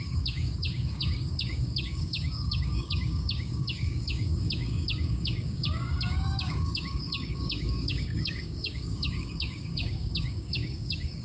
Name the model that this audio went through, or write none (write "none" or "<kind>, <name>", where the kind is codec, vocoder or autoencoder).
codec, DAC